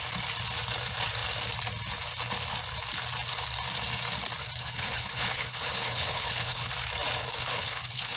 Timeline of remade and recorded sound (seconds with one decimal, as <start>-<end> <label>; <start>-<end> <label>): 0.0-4.6 recorded; 4.6-6.7 remade; 6.7-7.2 recorded; 7.2-8.2 remade